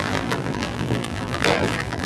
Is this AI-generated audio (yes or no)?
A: yes